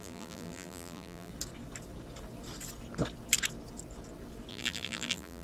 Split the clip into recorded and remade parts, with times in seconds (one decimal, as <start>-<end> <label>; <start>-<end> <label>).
0.0-1.3 remade; 1.3-4.5 recorded; 4.5-5.4 remade